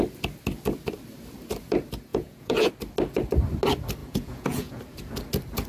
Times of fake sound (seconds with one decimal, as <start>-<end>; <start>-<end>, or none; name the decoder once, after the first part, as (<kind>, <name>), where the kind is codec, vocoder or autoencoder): 2.1-2.7 (vocoder, Vocos); 4.0-4.8